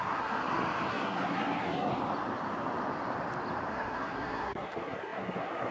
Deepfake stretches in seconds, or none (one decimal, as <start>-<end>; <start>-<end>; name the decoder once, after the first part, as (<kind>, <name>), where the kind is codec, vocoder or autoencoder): 0.0-0.4 (codec, SNAC); 0.9-1.9; 3.7-5.7